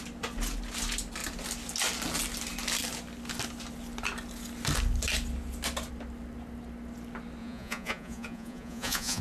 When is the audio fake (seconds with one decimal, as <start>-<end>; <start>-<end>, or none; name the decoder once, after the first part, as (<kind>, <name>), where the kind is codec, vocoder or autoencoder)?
7.4-9.2 (vocoder, Vocos)